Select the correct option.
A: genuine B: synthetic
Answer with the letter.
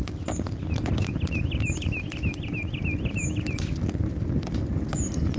A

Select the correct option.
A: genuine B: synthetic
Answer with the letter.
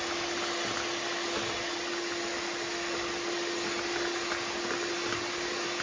A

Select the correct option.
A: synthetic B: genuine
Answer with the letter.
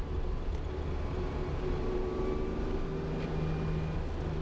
B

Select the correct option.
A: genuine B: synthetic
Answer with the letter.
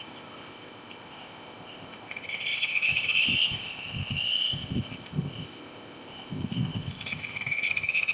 B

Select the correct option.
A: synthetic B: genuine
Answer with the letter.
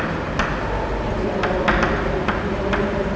B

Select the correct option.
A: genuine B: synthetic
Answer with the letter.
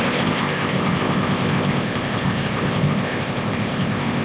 B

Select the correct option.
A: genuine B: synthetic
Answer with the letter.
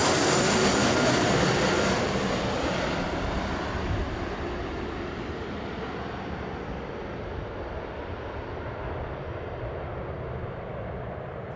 A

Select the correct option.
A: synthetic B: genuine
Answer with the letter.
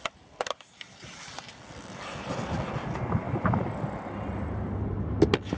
B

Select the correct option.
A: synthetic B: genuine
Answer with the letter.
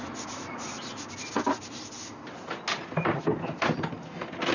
B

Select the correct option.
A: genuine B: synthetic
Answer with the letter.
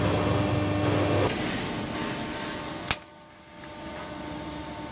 A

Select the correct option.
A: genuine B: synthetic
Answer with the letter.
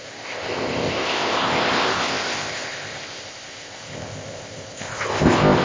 B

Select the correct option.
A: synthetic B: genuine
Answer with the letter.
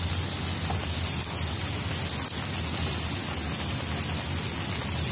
B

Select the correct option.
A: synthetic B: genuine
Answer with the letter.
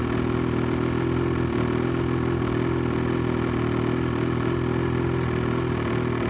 B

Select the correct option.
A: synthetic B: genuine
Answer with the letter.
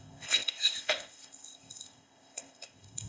A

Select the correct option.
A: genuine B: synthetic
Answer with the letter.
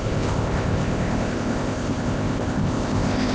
B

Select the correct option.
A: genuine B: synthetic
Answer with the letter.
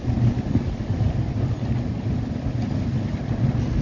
A